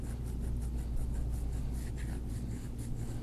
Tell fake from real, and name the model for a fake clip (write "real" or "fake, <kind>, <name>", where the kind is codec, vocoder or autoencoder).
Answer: real